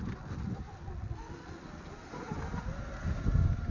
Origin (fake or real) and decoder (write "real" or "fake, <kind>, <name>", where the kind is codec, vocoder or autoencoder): real